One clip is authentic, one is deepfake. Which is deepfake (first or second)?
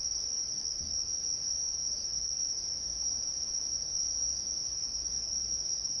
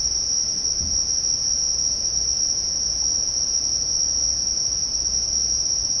first